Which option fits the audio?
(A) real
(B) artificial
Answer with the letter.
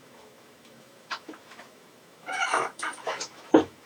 B